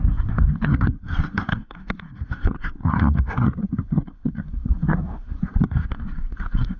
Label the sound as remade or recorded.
remade